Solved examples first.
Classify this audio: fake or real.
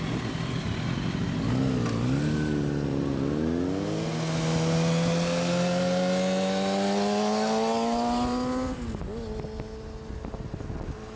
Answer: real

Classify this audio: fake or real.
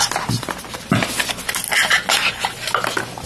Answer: real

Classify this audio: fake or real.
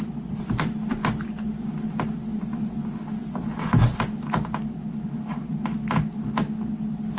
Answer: real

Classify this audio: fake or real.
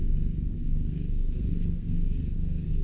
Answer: fake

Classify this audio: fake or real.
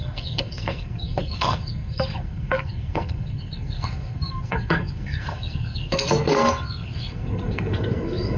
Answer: fake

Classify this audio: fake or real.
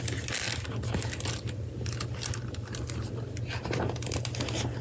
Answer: real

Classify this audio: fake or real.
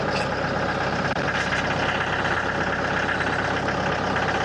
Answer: real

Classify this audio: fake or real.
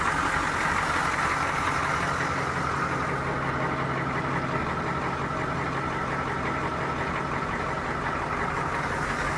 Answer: real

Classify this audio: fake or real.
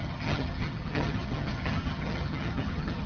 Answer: fake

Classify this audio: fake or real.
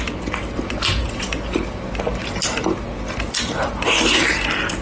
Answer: real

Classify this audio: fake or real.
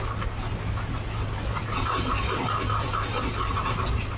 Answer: real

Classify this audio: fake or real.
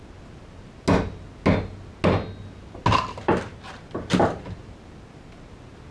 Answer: real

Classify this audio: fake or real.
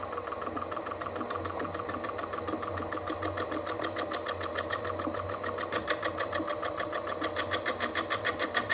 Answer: real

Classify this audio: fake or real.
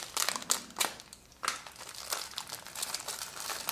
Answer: real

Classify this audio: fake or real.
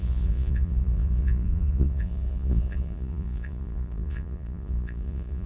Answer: fake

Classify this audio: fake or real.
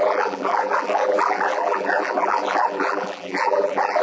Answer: fake